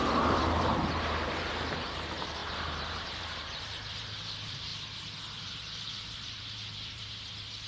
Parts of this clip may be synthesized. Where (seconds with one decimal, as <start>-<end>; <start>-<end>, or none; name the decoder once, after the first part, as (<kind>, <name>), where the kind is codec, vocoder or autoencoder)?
0.0-4.7 (vocoder, BigVGAN v2); 5.4-7.7